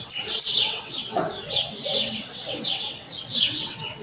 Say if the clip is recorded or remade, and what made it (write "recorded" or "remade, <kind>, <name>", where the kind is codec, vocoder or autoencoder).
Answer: remade, vocoder, WaveNeXt